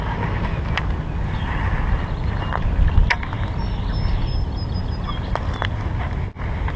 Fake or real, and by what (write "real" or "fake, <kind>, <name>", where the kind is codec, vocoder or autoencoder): real